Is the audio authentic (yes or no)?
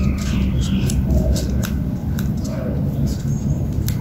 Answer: yes